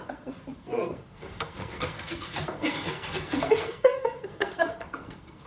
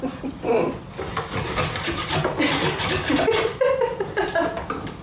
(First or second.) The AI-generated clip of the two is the first